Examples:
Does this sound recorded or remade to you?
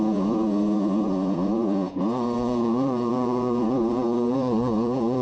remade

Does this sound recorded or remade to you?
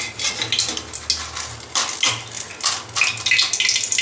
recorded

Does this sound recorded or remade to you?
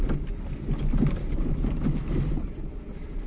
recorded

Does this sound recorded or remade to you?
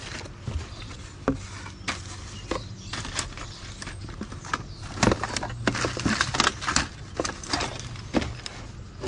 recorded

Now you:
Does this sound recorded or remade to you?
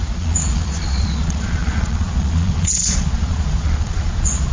remade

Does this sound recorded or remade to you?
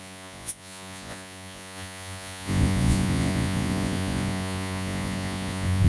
remade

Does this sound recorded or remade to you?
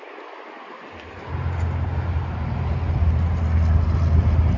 recorded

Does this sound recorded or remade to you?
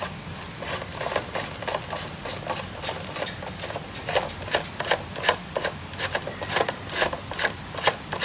recorded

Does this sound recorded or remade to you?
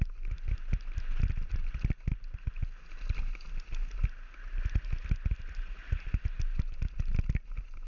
recorded